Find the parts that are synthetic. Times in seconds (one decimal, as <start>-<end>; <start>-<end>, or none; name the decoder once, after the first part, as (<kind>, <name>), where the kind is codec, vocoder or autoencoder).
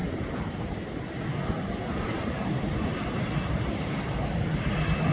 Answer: 0.0-1.2 (vocoder, BigVGAN v2); 1.9-4.4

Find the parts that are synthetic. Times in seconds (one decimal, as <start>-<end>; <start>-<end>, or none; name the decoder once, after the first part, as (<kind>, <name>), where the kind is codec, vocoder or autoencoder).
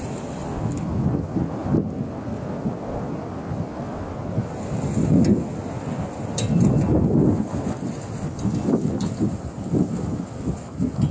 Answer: 0.0-0.4 (vocoder, BigVGAN v2); 1.0-1.6; 4.4-11.1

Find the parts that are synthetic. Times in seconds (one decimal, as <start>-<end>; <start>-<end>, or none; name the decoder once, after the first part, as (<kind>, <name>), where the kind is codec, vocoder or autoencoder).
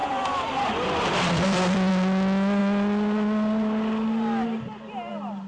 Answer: 0.0-1.9 (vocoder, BigVGAN v2)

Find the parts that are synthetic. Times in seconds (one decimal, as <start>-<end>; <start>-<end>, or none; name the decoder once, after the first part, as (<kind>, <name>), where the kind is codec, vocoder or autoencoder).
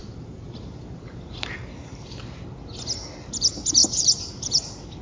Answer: 0.0-2.2 (vocoder, BigVGAN v2); 3.8-4.3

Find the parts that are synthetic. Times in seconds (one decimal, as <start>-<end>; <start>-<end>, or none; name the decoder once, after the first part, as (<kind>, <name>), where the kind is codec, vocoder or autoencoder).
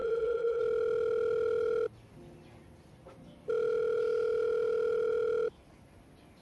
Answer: 0.0-0.6 (vocoder, BigVGAN v2)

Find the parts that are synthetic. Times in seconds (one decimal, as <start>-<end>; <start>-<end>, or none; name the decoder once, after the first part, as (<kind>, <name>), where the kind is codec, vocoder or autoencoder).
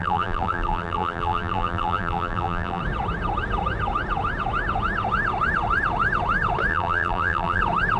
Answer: 0.0-2.8 (vocoder, BigVGAN v2); 6.7-7.6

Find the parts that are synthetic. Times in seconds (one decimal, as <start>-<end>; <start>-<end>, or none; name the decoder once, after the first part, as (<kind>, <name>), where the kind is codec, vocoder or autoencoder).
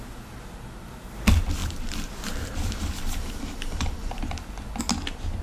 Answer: 1.6-4.8 (vocoder, BigVGAN v2)